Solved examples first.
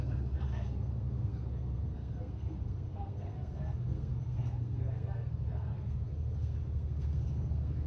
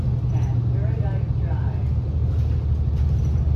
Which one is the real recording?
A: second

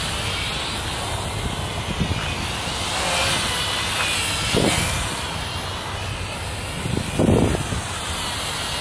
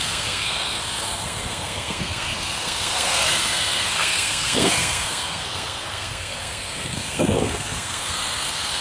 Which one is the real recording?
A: first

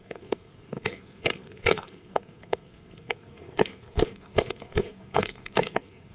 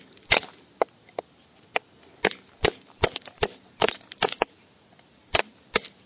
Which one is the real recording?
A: second